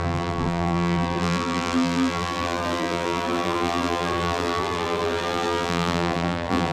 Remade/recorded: remade